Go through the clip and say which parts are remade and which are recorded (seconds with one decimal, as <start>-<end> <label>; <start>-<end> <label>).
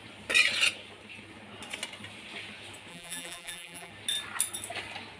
0.0-2.9 recorded; 2.9-3.9 remade; 3.9-5.2 recorded